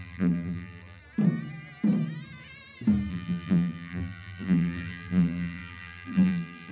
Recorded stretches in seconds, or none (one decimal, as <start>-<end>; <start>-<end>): 1.0-3.1

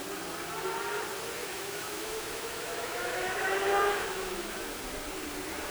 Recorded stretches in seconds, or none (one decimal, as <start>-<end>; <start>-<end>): 0.0-1.4; 4.8-5.7

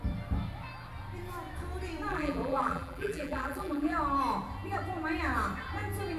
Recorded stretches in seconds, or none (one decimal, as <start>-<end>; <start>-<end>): 0.0-2.1; 4.0-6.2

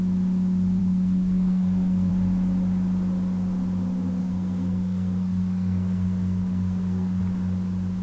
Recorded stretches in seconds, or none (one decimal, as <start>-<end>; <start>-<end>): 0.0-0.8; 2.1-4.2; 7.2-8.0

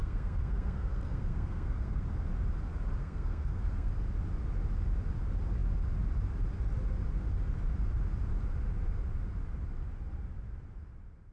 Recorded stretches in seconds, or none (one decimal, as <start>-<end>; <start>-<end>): 2.1-3.0; 3.9-11.3